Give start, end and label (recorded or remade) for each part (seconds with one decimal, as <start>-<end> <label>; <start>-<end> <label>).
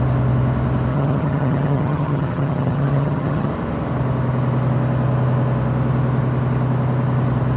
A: 0.0-0.9 recorded; 0.9-3.5 remade; 3.5-7.6 recorded